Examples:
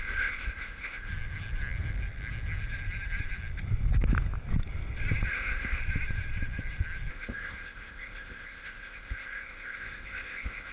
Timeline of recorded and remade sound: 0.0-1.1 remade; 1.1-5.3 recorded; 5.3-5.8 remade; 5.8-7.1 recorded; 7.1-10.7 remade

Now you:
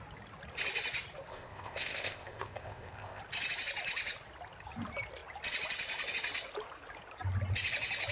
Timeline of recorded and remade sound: 0.0-1.3 recorded; 1.3-3.2 remade; 3.2-8.1 recorded

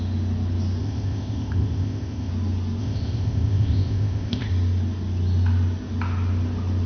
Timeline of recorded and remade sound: 0.0-0.8 recorded; 0.8-2.3 remade; 2.3-2.8 recorded; 2.8-4.5 remade; 4.5-6.9 recorded

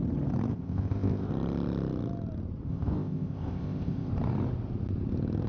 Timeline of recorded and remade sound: 0.0-0.5 recorded; 0.5-1.3 remade; 1.3-2.7 recorded; 2.7-4.1 remade; 4.1-5.5 recorded

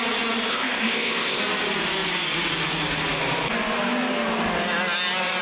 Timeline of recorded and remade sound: 0.0-0.5 recorded; 0.5-1.4 remade; 1.4-5.4 recorded

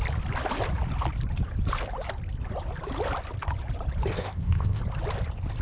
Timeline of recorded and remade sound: 0.0-4.1 recorded; 4.1-4.8 remade; 4.8-5.6 recorded

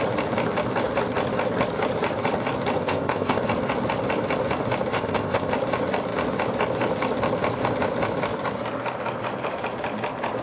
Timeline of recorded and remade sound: 0.0-2.8 recorded; 2.8-3.4 remade; 3.4-4.9 recorded; 4.9-5.5 remade; 5.5-10.4 recorded